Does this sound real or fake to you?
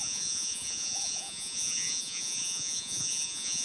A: fake